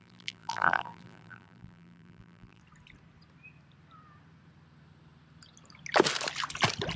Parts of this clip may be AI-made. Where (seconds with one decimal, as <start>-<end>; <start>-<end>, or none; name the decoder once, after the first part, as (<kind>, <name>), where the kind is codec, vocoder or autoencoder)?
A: 0.0-2.6 (vocoder, BigVGAN v2)